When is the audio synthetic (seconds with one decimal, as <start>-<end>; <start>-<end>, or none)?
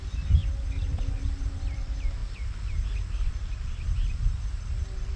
0.0-0.4; 1.0-2.2; 3.5-5.2